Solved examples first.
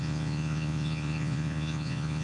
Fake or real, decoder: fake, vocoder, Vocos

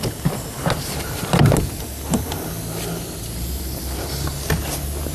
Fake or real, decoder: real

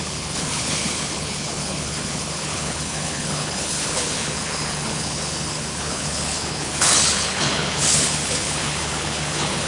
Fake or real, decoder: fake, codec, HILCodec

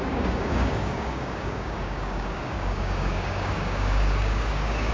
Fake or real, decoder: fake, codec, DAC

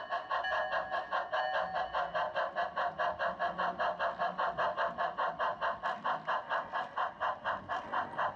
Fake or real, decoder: real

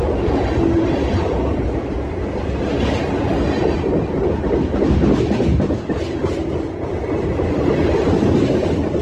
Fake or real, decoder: real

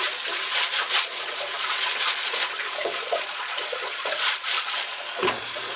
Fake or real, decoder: fake, vocoder, Vocos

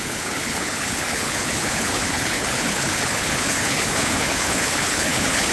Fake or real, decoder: fake, codec, HILCodec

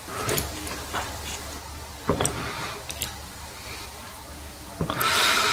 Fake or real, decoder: real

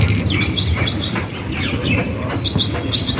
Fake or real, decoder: real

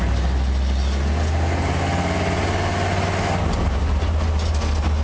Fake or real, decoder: real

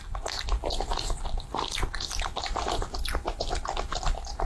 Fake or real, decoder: real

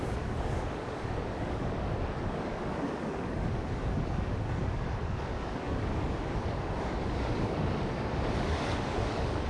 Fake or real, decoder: fake, codec, DAC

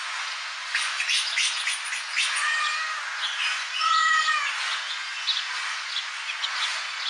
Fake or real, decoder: fake, vocoder, Vocos